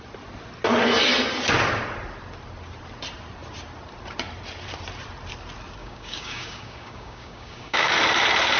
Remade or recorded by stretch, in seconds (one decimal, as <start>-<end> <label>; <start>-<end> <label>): 0.0-5.8 recorded; 5.8-7.9 remade; 7.9-8.6 recorded